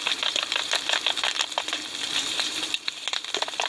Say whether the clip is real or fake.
real